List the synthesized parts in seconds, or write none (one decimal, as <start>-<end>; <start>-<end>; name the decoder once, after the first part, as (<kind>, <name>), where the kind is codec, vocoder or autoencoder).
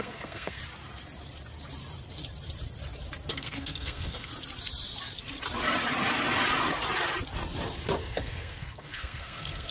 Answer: 0.0-0.6 (codec, SNAC); 3.3-4.3; 8.0-9.7